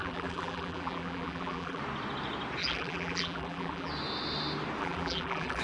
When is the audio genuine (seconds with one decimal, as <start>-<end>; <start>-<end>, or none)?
1.8-2.6; 3.9-4.8